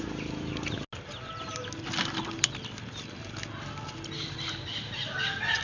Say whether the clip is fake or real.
real